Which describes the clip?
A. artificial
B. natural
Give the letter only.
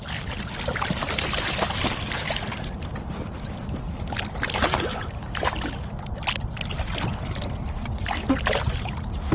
B